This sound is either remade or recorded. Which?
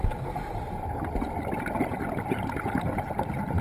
recorded